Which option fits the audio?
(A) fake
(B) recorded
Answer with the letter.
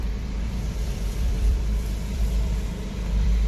A